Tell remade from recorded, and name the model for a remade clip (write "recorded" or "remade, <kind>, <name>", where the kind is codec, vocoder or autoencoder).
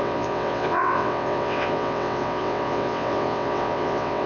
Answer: remade, vocoder, WaveNeXt